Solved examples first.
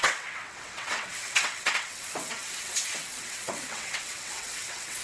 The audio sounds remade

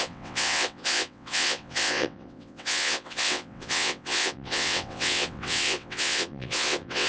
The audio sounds remade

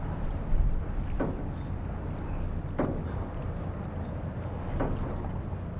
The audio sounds recorded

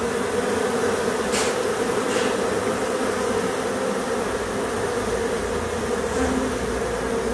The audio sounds recorded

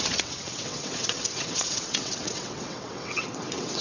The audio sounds remade